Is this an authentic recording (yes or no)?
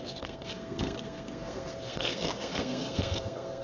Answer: no